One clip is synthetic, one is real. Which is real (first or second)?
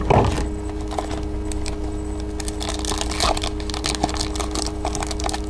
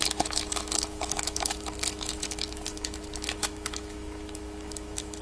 first